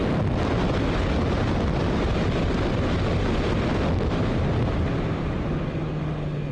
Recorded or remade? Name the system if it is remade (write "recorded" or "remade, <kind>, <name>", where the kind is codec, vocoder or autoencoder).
recorded